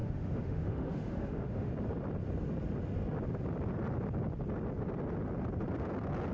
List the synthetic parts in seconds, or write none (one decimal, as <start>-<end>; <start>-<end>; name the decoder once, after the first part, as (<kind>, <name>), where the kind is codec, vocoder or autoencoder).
0.0-1.7 (autoencoder, DAC-VAE)